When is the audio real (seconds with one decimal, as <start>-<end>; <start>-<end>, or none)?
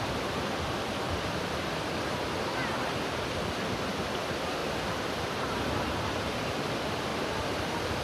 7.1-7.6